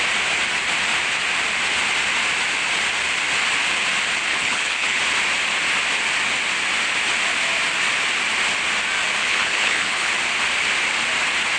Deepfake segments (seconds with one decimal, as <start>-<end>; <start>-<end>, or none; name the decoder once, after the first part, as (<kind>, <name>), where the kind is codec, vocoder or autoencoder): 4.3-5.0 (codec, HILCodec); 9.2-10.1

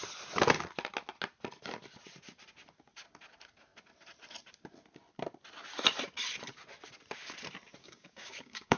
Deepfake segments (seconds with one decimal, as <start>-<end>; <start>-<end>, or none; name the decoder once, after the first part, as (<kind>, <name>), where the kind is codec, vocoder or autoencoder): 7.8-8.8 (codec, DAC)

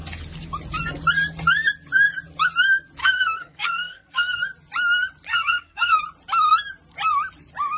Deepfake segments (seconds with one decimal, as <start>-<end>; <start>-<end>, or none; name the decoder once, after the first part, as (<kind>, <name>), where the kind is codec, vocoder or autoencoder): 3.0-4.4 (codec, SNAC); 5.3-6.0

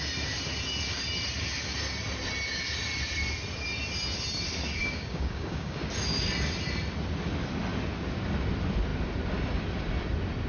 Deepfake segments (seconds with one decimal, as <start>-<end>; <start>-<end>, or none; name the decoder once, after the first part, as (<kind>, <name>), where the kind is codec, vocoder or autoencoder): 4.8-5.9 (codec, DAC)

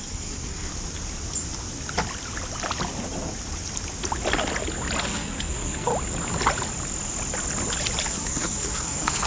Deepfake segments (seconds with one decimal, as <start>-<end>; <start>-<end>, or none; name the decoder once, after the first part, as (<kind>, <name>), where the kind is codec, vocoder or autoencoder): 0.0-0.7 (codec, SNAC); 5.0-5.9; 8.1-9.3

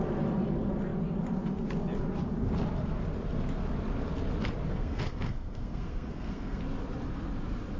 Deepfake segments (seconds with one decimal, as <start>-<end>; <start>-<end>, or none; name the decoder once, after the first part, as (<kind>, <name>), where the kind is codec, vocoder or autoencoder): 4.7-6.6 (codec, SNAC)